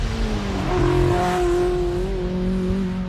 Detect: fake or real real